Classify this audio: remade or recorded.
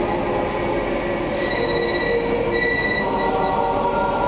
recorded